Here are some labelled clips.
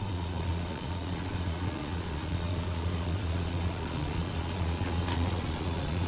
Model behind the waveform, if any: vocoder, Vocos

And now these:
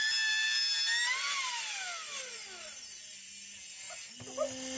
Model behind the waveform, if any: none